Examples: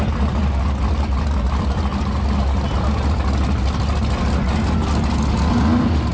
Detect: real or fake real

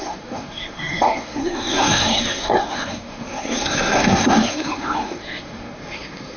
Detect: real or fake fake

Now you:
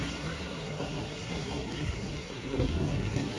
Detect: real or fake fake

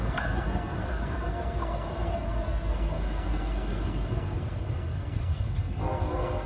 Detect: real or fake fake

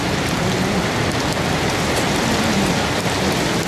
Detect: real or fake real